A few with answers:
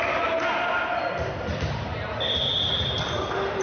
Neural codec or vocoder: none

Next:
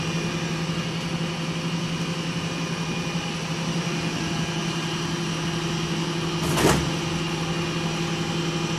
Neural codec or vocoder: none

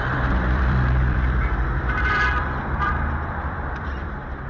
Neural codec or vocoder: vocoder, BigVGAN v2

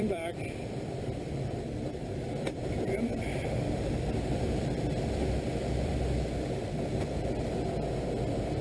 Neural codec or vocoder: vocoder, BigVGAN v2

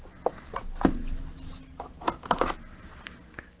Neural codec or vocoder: none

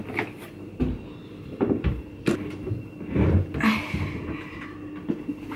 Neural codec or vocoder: none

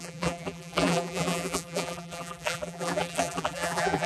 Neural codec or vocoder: vocoder, BigVGAN v2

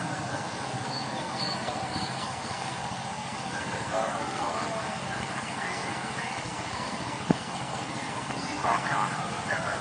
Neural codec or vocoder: codec, SNAC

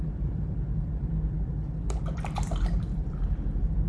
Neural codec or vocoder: vocoder, BigVGAN v2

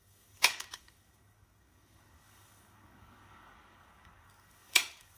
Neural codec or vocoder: codec, DAC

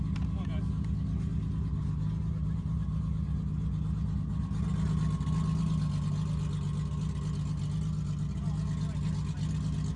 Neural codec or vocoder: none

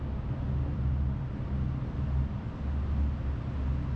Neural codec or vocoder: none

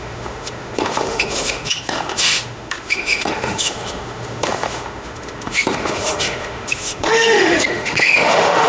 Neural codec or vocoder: autoencoder, DAC-VAE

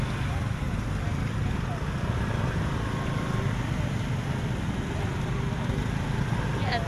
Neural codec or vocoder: none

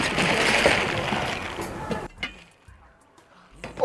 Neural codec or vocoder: none